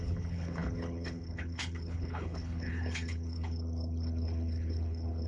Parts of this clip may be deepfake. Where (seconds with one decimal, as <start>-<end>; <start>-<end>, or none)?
0.0-5.3